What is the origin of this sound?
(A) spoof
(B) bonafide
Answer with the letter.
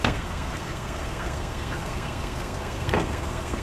A